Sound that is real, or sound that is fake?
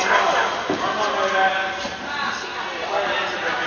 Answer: real